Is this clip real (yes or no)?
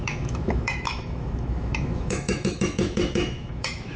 no